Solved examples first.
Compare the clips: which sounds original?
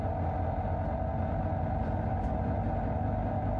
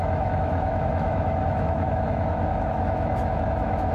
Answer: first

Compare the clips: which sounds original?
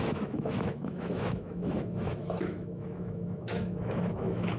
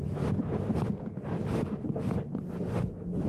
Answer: second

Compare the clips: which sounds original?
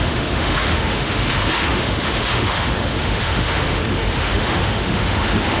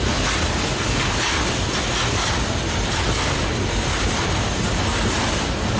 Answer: second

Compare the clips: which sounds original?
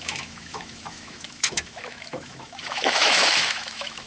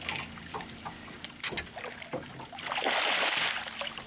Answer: second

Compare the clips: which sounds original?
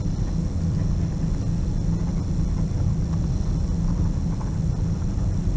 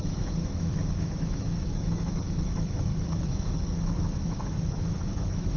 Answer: first